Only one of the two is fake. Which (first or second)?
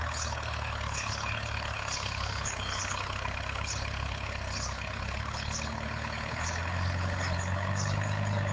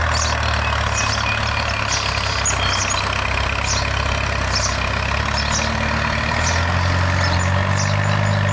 first